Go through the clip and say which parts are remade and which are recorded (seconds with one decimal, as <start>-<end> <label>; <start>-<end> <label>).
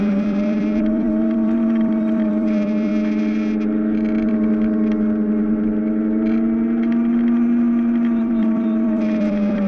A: 0.0-2.9 remade; 2.9-8.2 recorded; 8.2-9.7 remade